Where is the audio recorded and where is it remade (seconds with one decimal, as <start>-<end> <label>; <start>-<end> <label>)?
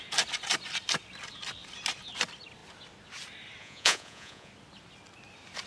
0.0-3.6 recorded; 3.6-4.5 remade; 4.5-5.7 recorded